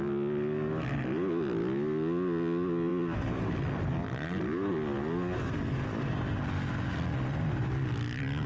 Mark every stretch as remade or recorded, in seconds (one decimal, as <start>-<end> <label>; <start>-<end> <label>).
0.0-8.5 recorded